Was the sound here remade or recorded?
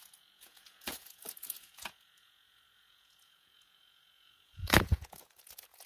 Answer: remade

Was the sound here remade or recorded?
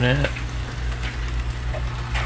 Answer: recorded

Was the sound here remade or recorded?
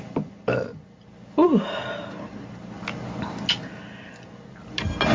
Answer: recorded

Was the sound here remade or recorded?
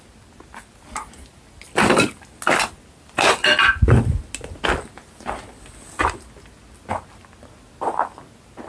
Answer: recorded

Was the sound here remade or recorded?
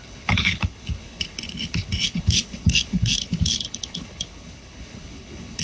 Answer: remade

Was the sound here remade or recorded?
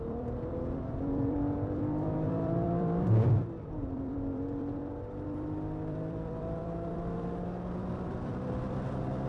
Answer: remade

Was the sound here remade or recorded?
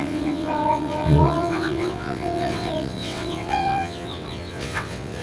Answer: remade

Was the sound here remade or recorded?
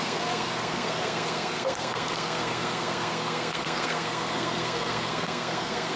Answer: remade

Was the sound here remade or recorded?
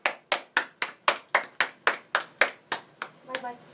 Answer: recorded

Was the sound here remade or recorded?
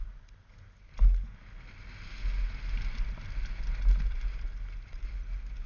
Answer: recorded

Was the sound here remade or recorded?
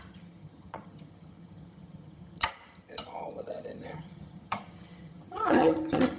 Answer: remade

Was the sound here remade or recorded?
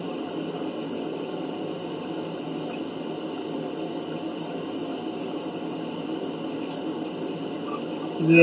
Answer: recorded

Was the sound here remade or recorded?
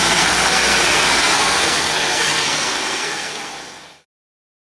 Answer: remade